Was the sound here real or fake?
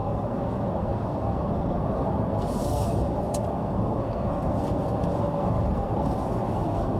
fake